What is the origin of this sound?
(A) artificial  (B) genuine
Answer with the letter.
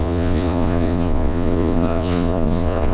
A